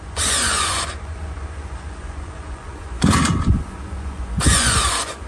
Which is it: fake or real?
fake